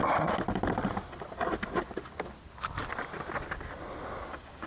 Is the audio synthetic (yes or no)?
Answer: no